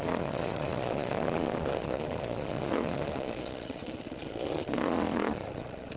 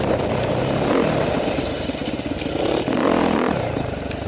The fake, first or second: first